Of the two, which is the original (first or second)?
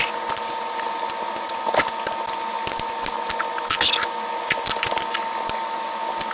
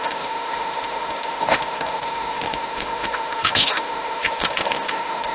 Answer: first